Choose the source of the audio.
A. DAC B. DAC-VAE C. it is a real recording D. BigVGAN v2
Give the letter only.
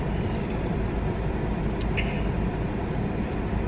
C